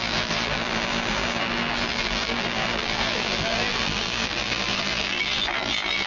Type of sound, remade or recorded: remade